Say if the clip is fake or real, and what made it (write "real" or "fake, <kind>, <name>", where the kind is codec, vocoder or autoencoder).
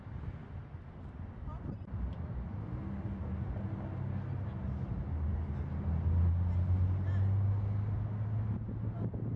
real